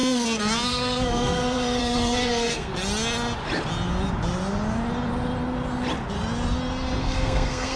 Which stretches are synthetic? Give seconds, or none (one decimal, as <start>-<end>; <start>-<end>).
0.0-2.7; 7.0-7.8